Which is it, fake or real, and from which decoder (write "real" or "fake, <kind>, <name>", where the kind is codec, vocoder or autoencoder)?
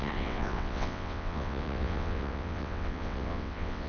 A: fake, vocoder, WaveNeXt